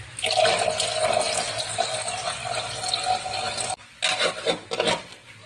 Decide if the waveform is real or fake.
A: real